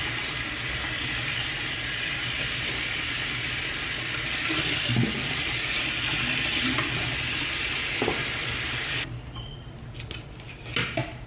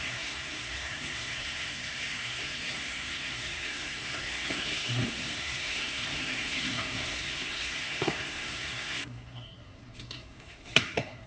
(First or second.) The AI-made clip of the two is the second